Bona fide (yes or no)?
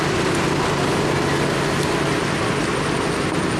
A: yes